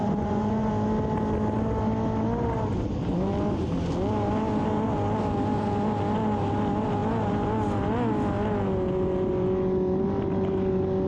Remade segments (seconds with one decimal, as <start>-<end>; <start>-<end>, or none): 0.0-0.7